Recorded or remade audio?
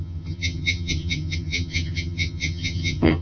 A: remade